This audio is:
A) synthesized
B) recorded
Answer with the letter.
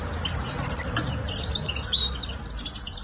B